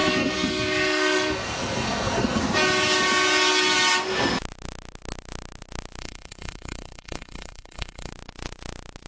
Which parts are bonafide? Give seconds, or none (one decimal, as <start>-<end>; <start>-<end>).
2.4-6.0; 8.1-9.1